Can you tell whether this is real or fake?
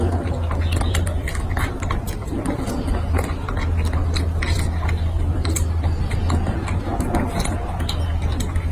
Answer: real